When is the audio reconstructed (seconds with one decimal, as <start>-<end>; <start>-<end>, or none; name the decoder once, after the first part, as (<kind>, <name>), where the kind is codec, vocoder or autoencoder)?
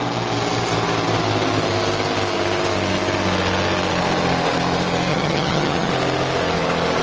5.1-5.9 (vocoder, HiFi-GAN)